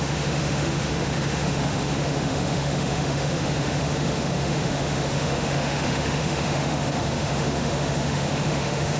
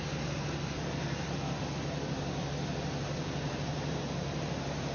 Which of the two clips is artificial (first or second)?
first